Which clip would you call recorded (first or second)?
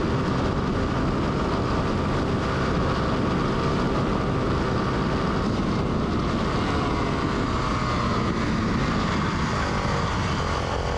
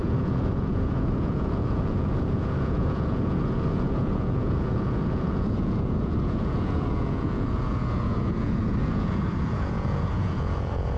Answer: first